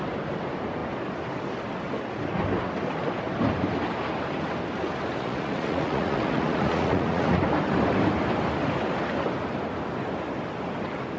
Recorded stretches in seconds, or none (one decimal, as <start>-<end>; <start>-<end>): 0.0-5.2; 7.4-11.2